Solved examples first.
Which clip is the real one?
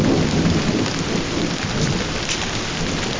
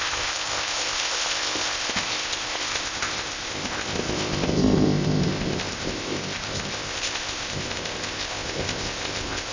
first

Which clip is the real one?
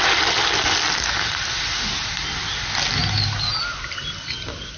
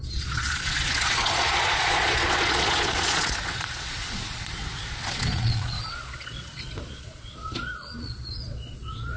first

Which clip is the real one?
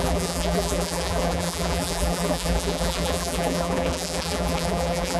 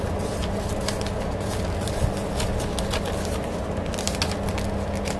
second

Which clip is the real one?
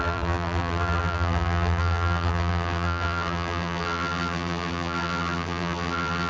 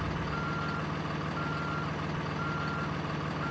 second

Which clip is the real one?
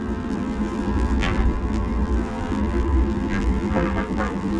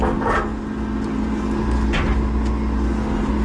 second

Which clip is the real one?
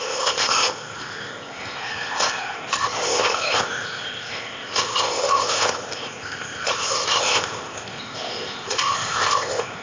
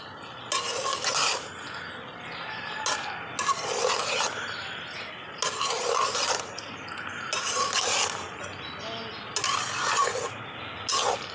second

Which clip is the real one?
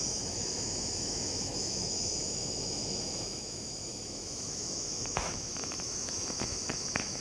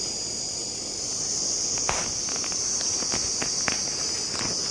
second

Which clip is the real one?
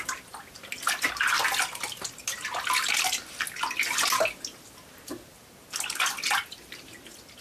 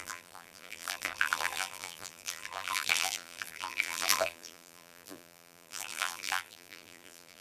first